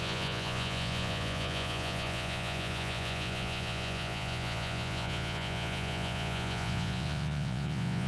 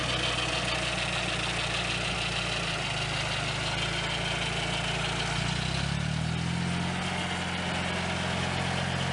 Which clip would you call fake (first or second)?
first